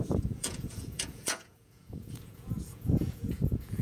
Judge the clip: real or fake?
fake